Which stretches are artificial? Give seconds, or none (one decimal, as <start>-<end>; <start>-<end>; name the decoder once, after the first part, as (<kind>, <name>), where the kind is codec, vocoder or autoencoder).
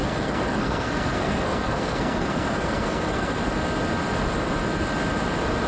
0.0-3.4 (codec, SNAC)